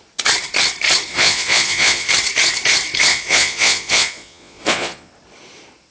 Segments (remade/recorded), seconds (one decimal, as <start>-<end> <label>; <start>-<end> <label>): 0.0-1.1 recorded; 1.1-2.1 remade; 2.1-3.1 recorded; 3.1-5.1 remade; 5.1-5.9 recorded